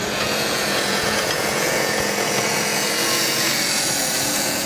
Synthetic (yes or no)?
yes